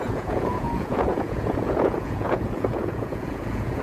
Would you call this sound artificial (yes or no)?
yes